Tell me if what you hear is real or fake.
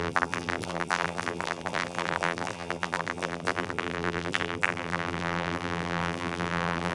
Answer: fake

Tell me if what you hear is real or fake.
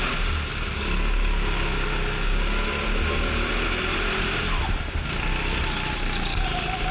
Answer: real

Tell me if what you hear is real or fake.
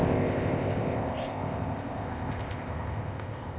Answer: fake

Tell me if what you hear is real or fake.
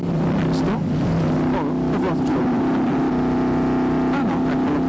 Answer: real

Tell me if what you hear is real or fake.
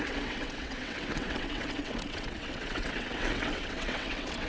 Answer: fake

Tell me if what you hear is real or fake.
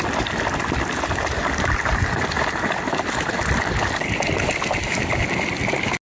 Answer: real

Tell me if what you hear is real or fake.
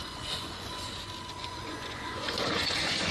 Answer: fake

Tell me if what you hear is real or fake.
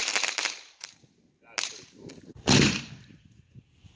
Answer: real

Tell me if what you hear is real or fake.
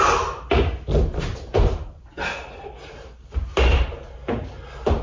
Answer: real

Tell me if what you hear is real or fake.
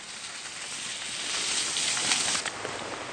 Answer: real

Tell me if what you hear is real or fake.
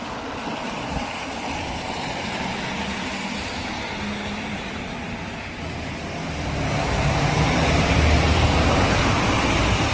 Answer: fake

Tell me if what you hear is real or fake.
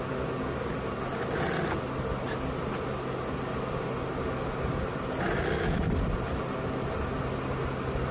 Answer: real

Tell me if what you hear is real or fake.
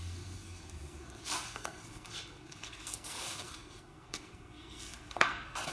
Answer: fake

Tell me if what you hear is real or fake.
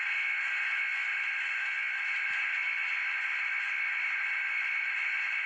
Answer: real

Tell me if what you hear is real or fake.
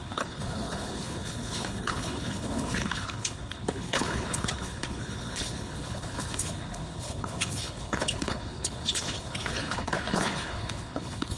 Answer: fake